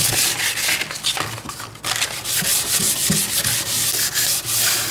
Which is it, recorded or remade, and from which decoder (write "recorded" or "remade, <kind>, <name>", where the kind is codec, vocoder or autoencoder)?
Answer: recorded